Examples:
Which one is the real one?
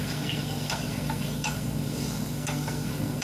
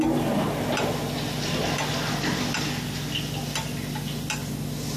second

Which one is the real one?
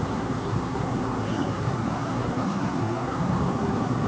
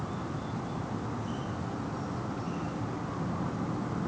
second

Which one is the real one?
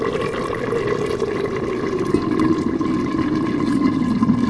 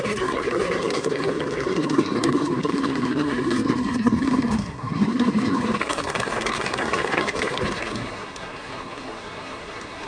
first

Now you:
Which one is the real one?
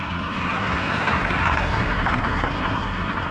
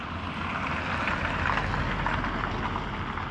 second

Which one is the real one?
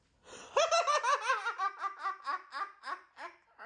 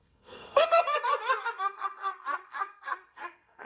first